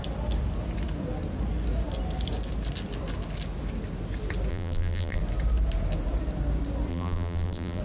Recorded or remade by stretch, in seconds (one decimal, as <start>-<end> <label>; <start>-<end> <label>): 0.0-4.5 recorded; 4.5-5.2 remade; 5.2-6.9 recorded; 6.9-7.8 remade